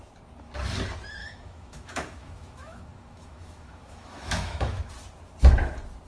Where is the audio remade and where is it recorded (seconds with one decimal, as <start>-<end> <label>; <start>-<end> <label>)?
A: 0.0-1.2 recorded; 1.2-4.9 remade; 4.9-6.1 recorded